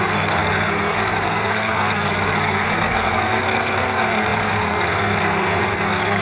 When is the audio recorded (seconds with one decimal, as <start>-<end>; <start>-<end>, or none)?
none